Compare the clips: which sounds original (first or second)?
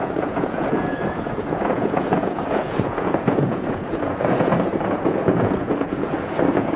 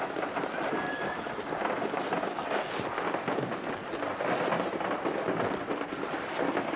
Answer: second